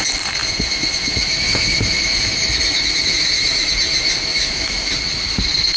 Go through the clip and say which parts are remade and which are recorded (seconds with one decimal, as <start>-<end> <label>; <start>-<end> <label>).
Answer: 0.0-0.4 recorded; 0.4-3.7 remade; 3.7-4.3 recorded; 4.3-4.9 remade; 4.9-5.8 recorded